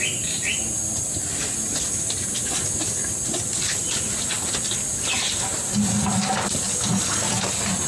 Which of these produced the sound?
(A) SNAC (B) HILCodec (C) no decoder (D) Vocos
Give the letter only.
C